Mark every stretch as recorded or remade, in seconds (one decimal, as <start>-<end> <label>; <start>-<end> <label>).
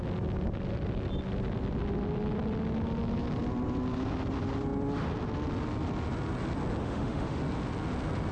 0.0-6.8 recorded; 6.8-7.4 remade; 7.4-8.3 recorded